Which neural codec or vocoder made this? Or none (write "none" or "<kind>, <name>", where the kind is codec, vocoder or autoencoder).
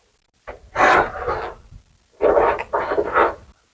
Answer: none